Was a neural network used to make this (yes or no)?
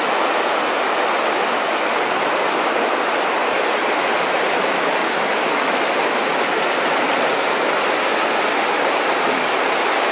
no